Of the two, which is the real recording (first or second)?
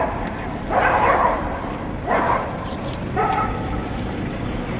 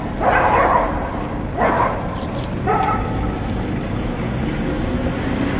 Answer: second